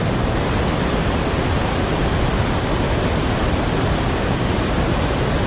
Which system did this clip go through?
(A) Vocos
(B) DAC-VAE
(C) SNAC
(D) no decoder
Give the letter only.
D